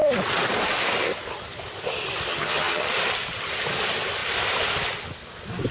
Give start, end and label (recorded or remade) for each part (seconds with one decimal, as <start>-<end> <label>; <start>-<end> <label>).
0.0-2.3 recorded; 2.3-2.9 remade; 2.9-5.7 recorded